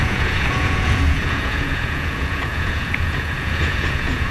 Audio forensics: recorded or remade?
remade